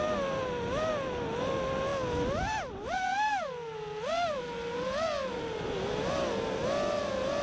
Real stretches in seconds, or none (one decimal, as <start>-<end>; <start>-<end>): 0.0-7.4